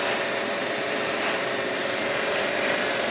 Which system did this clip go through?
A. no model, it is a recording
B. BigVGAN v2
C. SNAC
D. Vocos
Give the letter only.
B